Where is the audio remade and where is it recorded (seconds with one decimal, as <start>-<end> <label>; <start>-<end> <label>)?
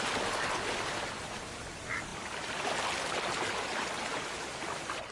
0.0-5.1 recorded